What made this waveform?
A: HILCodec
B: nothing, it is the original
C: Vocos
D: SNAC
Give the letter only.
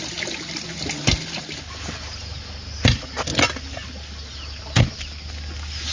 B